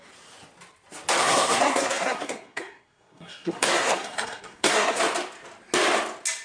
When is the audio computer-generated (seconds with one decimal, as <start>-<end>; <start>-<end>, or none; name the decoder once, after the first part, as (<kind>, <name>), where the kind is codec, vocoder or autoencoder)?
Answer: 1.2-5.0 (codec, SNAC)